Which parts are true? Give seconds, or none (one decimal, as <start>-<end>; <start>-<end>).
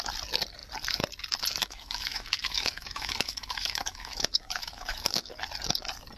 0.0-1.6; 5.3-6.2